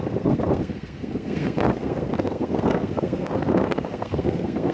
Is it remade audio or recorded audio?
remade